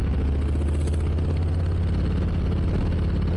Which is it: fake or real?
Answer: real